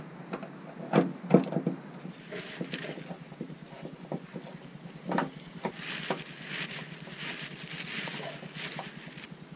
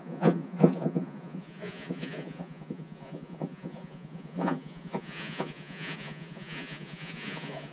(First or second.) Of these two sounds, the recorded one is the first